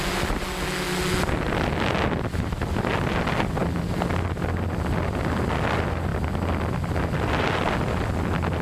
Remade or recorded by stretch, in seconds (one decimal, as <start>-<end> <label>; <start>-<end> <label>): 0.0-8.6 recorded